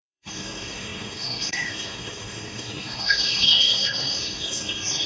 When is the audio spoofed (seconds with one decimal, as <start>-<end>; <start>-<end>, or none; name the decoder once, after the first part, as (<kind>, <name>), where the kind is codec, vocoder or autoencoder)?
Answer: 0.0-5.1 (codec, SNAC)